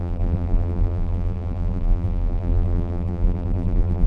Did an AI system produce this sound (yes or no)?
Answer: yes